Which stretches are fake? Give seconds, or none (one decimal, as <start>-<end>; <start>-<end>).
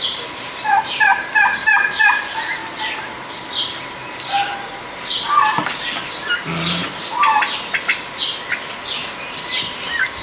0.0-1.1; 1.6-2.6; 3.1-4.5; 9.1-10.2